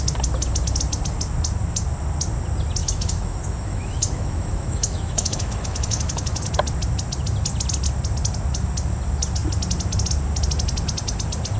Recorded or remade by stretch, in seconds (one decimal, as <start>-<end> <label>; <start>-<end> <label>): 0.0-2.8 recorded; 2.8-6.5 remade; 6.5-11.6 recorded